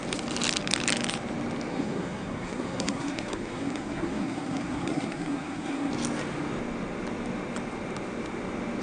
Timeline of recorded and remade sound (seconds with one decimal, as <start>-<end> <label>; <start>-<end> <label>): 0.0-1.7 recorded; 1.7-5.9 remade; 5.9-8.8 recorded